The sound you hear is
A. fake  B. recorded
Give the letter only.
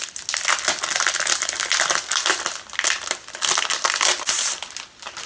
B